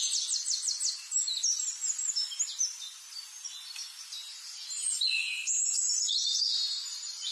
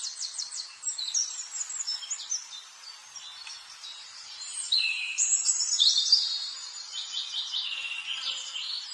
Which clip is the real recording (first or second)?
first